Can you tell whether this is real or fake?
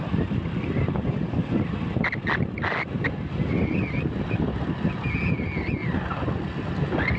real